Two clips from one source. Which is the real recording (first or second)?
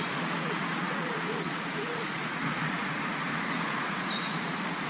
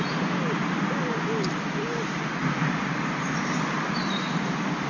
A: second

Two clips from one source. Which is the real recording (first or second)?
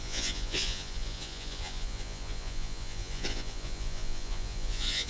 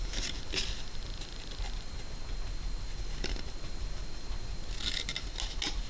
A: second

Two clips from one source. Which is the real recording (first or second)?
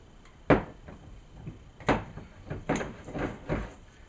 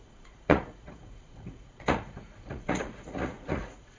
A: first